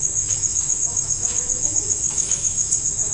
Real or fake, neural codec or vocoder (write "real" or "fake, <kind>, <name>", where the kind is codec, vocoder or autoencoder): fake, autoencoder, DAC-VAE